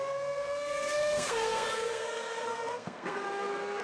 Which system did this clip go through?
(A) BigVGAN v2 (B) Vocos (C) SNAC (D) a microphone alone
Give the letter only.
C